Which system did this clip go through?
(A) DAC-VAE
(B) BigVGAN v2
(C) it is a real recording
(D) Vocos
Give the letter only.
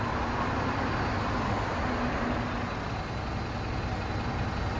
C